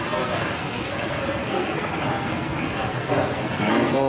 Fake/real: fake